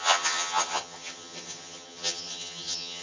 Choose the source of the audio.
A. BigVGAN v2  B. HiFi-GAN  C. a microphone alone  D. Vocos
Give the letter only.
B